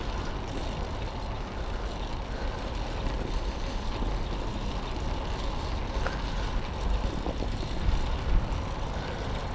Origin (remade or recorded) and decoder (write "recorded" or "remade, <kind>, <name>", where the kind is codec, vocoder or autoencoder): recorded